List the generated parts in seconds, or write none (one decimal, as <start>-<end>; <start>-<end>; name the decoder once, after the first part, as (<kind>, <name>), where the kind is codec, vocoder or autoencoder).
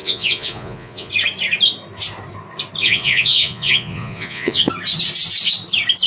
0.0-1.1 (vocoder, Vocos); 2.8-4.7